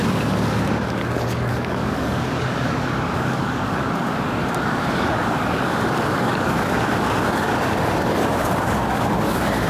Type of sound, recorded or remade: remade